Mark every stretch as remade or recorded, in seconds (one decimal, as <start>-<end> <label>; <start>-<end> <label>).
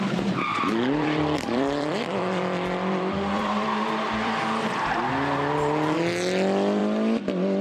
0.0-0.5 recorded; 0.5-5.1 remade; 5.1-7.6 recorded